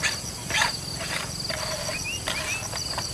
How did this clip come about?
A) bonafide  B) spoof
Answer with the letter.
A